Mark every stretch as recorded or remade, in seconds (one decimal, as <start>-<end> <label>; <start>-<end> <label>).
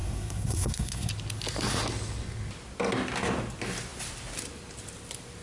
0.0-1.1 remade; 1.1-5.4 recorded